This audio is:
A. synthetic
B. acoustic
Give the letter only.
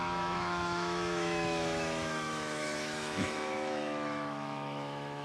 A